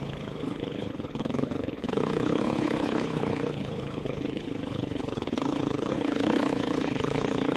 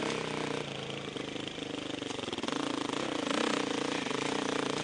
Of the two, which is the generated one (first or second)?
first